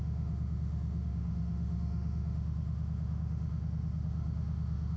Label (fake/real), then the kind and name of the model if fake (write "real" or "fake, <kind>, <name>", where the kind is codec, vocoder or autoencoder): fake, autoencoder, DAC-VAE